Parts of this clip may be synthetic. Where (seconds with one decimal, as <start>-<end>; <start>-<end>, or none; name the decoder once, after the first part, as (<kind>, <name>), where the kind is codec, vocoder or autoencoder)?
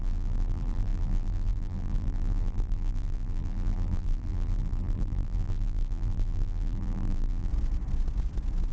0.0-7.5 (vocoder, BigVGAN v2)